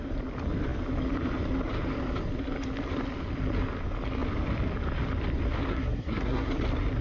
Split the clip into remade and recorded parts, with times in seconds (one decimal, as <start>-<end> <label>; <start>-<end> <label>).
0.0-5.7 recorded; 5.7-6.5 remade; 6.5-7.0 recorded